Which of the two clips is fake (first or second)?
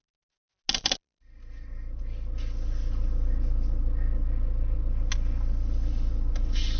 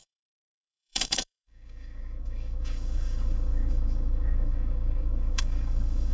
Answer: second